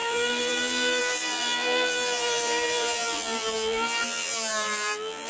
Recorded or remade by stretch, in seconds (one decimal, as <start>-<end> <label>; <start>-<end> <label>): 0.0-5.3 remade